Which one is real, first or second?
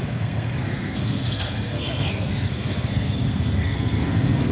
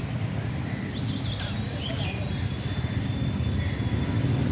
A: second